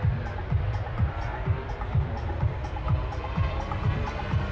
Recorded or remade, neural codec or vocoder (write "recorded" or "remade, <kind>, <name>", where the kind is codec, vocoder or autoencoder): remade, vocoder, BigVGAN v2